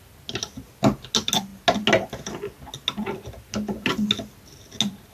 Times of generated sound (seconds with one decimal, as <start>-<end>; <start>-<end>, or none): none